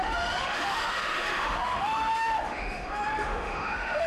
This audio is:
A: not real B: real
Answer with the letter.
A